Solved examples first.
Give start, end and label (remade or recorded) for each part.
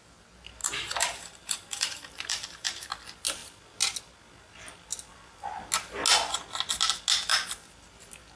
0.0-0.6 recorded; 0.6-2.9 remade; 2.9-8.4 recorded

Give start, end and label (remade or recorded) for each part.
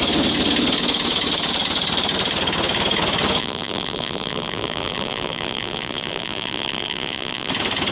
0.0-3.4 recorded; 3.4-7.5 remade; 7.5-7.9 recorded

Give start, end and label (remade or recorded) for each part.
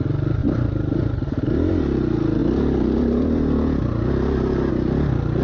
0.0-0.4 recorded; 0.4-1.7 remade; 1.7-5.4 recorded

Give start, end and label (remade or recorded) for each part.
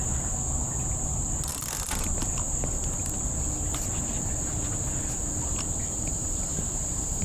0.0-6.2 recorded; 6.2-7.2 remade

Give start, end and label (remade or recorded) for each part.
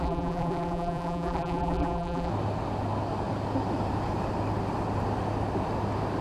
0.0-2.3 remade; 2.3-6.2 recorded